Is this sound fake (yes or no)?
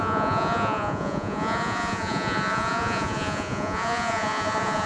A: yes